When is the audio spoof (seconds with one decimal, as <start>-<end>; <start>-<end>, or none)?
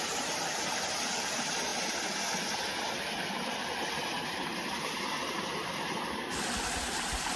none